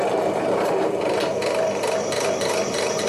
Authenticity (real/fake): fake